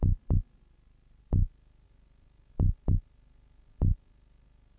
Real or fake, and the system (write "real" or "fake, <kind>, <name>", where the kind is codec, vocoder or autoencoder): real